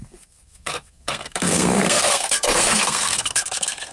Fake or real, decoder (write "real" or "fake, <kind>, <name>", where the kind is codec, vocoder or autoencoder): fake, codec, SNAC